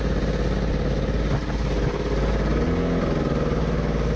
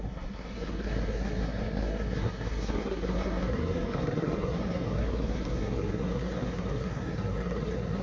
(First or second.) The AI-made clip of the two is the second